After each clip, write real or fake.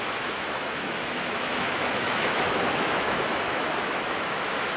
fake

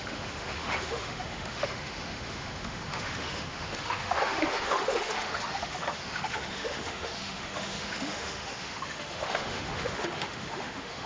fake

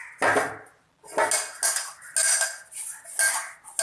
real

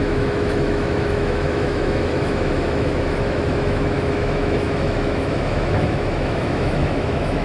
fake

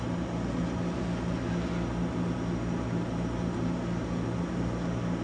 real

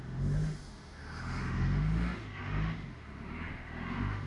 fake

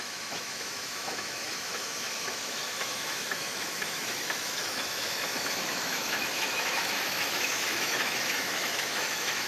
fake